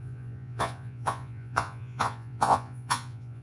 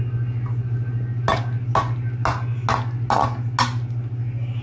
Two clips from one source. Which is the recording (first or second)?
second